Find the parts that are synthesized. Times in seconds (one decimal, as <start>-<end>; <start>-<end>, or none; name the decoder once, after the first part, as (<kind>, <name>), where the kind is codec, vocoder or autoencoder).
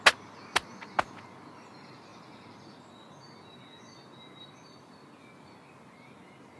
none